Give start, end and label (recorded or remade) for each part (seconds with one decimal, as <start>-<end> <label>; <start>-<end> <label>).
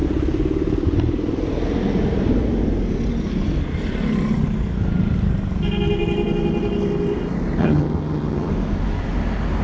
0.0-7.6 recorded; 7.6-8.5 remade; 8.5-9.6 recorded